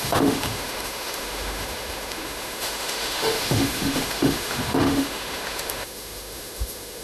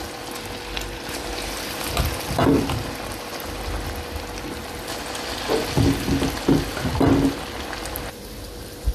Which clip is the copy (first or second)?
first